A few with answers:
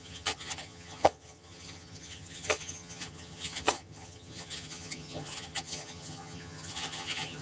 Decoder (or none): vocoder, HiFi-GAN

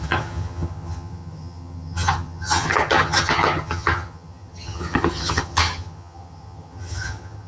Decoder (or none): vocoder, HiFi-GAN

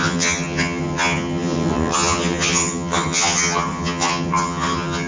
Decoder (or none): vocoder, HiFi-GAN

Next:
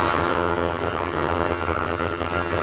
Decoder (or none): vocoder, HiFi-GAN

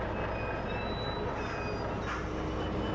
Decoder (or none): none